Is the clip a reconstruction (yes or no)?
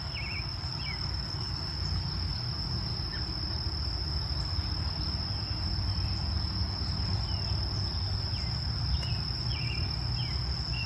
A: no